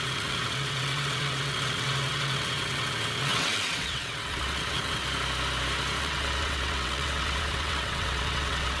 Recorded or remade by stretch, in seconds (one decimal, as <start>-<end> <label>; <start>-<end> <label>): 0.0-5.0 remade; 5.0-6.0 recorded; 6.0-8.8 remade